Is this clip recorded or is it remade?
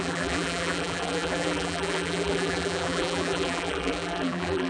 remade